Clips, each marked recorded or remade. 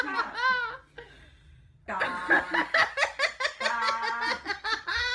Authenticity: recorded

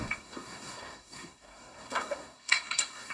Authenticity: remade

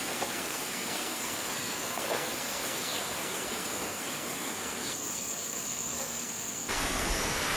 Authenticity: remade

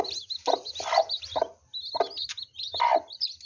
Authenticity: recorded